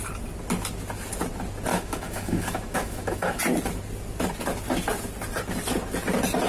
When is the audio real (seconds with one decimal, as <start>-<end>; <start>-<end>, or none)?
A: 0.0-1.7; 3.4-6.5